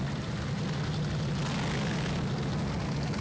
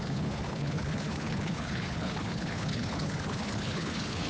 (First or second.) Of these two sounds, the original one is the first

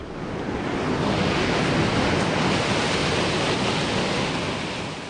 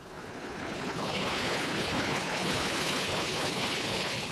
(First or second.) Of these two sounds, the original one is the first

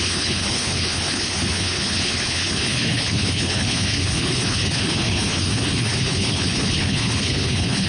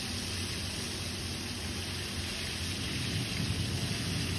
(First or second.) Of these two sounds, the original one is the second